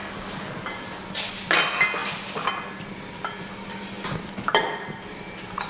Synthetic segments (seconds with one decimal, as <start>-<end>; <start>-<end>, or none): 0.0-1.1; 2.0-5.7